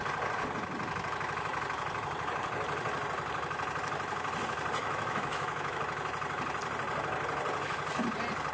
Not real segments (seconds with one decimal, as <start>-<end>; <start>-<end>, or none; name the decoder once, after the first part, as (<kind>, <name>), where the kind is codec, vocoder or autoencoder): 4.8-5.8 (autoencoder, DAC-VAE)